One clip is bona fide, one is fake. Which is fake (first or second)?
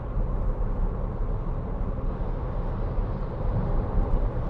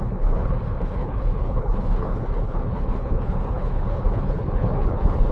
second